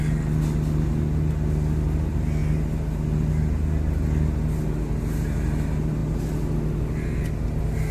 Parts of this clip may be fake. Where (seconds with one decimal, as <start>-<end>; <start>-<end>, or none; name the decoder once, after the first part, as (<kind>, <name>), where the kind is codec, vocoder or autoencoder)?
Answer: none